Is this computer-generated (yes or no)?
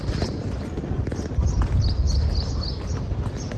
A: no